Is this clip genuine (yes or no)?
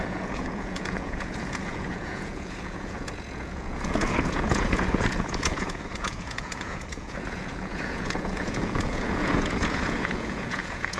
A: no